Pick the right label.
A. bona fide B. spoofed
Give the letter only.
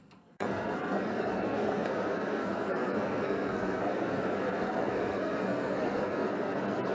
B